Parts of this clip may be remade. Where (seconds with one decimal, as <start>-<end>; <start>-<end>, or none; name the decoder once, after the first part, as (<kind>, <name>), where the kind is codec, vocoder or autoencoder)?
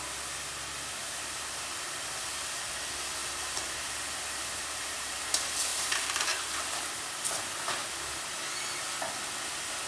1.0-2.6 (vocoder, BigVGAN v2); 3.2-5.2; 5.7-6.6; 7.8-8.4